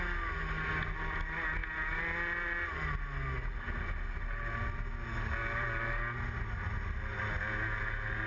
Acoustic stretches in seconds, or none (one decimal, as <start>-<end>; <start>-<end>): 0.0-8.3